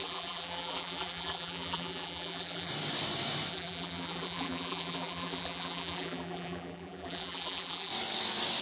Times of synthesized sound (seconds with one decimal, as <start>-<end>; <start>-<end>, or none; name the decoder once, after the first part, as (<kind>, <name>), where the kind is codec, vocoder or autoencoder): 0.0-2.7 (vocoder, BigVGAN v2); 3.5-7.9